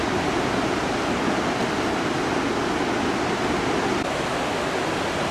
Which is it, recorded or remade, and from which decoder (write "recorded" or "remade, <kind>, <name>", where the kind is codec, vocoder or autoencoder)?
recorded